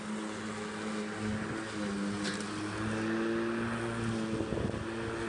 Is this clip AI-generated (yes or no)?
no